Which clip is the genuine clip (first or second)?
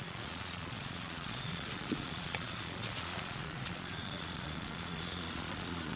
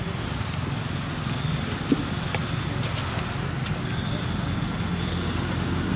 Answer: second